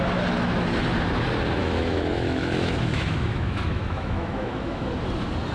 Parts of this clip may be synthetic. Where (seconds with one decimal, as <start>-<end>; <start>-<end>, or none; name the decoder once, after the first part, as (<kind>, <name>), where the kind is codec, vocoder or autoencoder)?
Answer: 1.6-4.9 (autoencoder, DAC-VAE)